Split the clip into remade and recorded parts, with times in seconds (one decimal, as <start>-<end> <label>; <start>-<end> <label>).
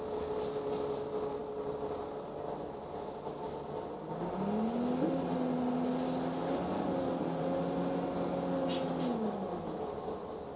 0.0-10.6 recorded